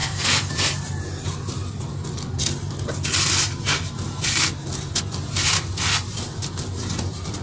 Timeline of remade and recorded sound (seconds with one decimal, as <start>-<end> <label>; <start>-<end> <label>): 0.0-0.5 remade; 0.5-7.4 recorded